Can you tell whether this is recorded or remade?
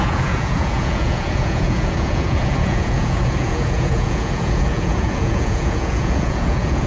remade